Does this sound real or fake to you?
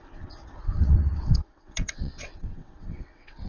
fake